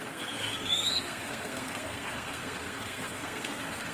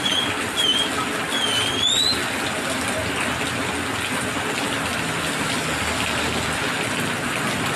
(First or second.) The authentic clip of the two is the second